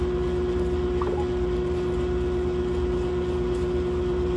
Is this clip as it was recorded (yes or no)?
yes